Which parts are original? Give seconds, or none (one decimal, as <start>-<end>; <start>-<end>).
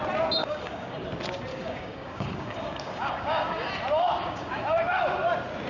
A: 0.0-0.4; 1.0-1.5; 3.7-4.2; 4.8-5.7